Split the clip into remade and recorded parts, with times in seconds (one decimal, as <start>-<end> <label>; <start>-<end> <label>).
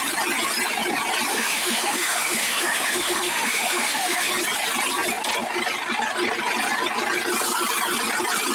0.0-1.3 recorded; 1.3-4.3 remade; 4.3-8.5 recorded